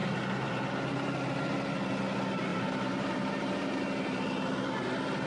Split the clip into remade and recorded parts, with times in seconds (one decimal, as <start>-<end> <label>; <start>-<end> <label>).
0.0-0.5 remade; 0.5-2.5 recorded; 2.5-3.8 remade; 3.8-5.3 recorded